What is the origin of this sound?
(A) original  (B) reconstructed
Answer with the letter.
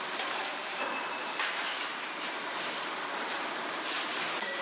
B